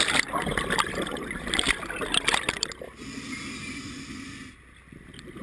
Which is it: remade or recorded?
recorded